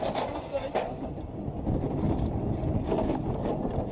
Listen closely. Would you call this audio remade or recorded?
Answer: recorded